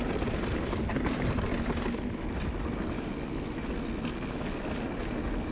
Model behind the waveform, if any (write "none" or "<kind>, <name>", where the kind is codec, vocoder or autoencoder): none